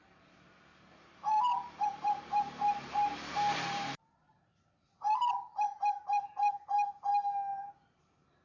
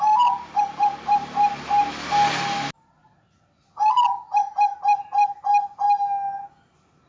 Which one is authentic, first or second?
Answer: second